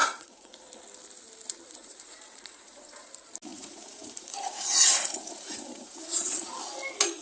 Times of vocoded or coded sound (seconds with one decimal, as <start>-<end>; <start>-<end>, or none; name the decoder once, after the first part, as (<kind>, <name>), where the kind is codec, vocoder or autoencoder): 0.0-0.6 (vocoder, Vocos); 1.8-3.1; 3.5-6.5

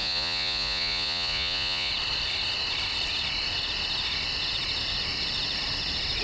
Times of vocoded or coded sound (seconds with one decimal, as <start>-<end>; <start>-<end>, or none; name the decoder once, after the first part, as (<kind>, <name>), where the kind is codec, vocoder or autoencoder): 0.0-1.9 (vocoder, Vocos)

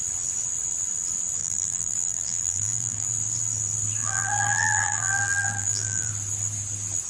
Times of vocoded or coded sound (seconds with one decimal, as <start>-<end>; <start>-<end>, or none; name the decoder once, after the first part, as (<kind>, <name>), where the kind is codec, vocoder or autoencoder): 1.4-3.1 (vocoder, BigVGAN v2); 4.0-6.1

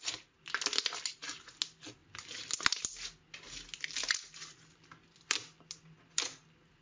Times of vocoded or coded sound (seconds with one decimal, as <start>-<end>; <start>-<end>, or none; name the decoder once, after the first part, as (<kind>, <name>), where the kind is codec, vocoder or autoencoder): none

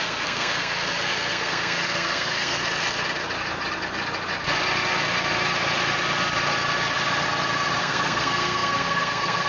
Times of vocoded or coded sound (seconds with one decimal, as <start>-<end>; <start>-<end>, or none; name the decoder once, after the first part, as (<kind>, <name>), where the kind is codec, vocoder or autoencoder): 0.0-2.6 (codec, SNAC); 7.8-9.5

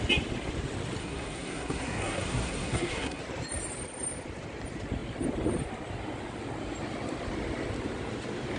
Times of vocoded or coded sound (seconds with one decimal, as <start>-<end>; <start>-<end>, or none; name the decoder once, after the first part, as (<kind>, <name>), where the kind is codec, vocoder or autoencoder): 1.0-3.2 (codec, SNAC)

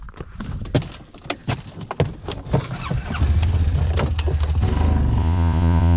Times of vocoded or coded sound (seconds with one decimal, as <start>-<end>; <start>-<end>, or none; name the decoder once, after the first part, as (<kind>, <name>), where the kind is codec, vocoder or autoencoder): 5.2-6.0 (vocoder, Vocos)

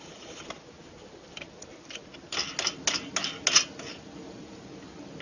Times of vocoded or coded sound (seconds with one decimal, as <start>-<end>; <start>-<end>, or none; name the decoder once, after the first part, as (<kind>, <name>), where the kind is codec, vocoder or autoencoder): none